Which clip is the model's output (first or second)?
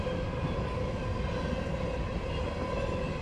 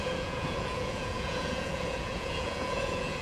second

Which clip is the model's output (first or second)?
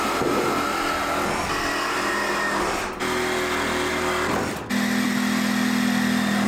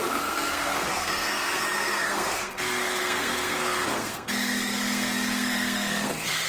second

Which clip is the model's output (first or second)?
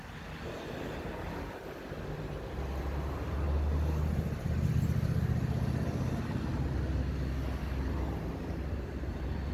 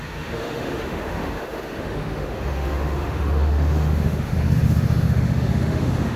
second